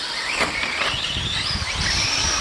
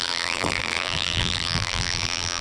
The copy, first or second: second